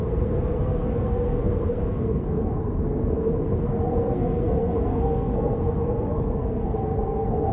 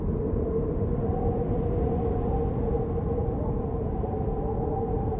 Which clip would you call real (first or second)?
second